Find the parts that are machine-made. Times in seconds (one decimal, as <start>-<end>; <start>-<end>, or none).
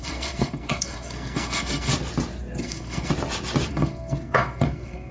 0.0-1.9; 2.6-3.1; 3.7-5.1